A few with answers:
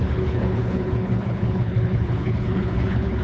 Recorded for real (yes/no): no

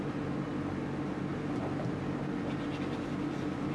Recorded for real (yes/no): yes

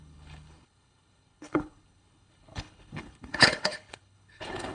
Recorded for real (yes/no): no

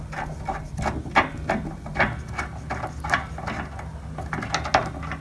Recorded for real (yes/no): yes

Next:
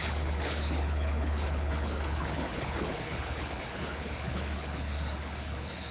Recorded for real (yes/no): no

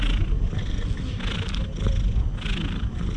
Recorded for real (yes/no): yes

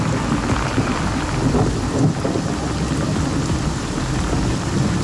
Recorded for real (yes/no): yes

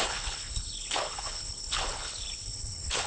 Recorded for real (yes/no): no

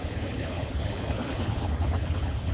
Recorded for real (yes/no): no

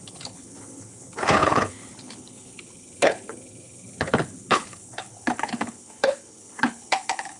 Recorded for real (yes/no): no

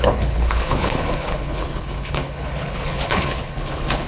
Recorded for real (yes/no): no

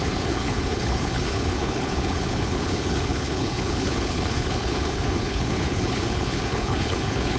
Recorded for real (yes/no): no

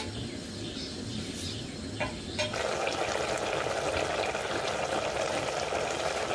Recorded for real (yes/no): yes